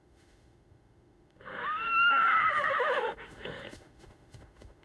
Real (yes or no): no